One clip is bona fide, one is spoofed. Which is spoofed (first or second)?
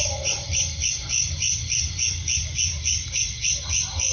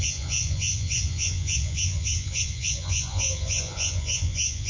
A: second